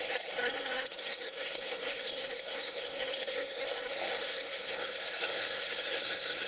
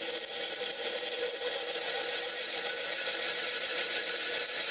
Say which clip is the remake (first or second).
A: first